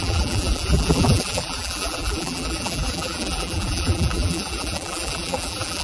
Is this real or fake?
fake